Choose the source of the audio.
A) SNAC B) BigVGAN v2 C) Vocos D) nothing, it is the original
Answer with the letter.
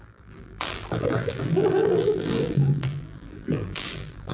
B